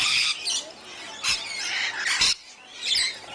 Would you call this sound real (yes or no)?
yes